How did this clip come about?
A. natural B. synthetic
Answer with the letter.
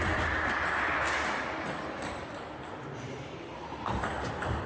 A